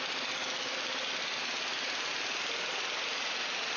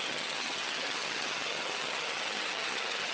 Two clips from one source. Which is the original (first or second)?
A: first